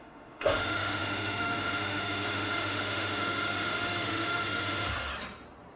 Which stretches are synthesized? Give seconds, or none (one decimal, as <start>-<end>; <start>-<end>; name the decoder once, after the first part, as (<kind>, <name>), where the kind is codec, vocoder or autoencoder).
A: 0.0-5.1 (autoencoder, DAC-VAE)